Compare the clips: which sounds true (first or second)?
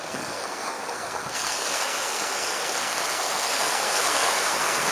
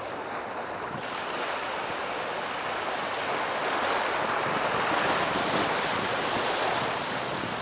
second